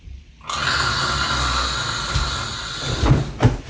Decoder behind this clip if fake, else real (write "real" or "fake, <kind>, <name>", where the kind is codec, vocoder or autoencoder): real